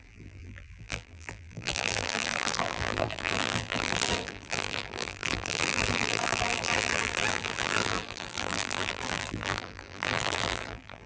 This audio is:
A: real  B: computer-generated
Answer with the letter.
B